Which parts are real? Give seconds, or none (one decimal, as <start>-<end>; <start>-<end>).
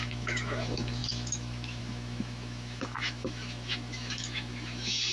none